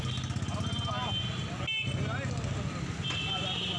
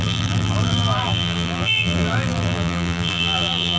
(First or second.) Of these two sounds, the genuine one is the first